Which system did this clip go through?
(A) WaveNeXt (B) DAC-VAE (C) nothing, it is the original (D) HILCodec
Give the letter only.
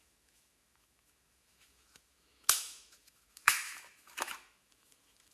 B